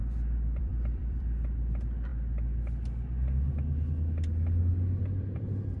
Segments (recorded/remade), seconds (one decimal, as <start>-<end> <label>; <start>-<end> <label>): 0.0-0.6 recorded; 0.6-2.1 remade; 2.1-4.7 recorded; 4.7-5.8 remade